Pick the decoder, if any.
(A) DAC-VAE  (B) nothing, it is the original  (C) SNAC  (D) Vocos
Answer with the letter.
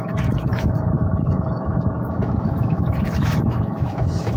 A